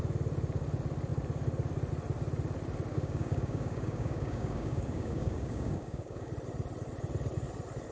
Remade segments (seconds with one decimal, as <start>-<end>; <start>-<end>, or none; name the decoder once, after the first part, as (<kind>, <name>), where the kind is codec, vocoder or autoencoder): 2.9-6.3 (codec, DAC)